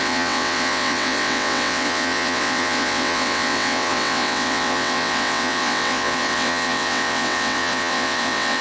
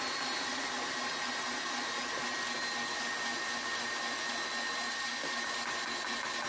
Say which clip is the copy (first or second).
first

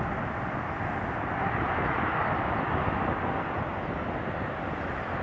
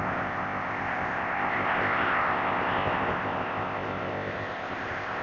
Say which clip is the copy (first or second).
second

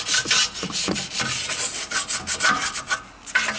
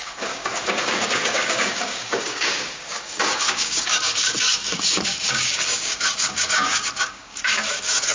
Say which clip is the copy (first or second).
second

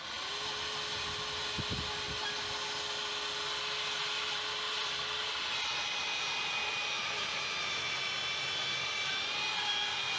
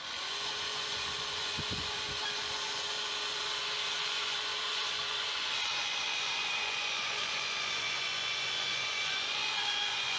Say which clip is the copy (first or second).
second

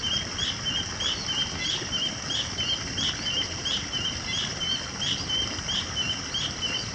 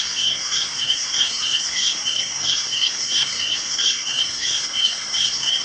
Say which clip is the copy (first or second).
second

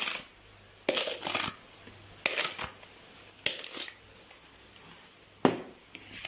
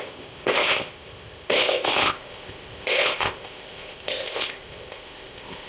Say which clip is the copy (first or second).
second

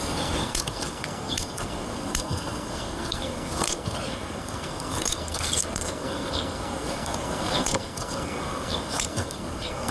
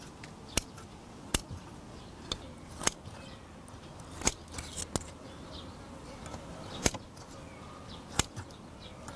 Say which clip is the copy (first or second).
first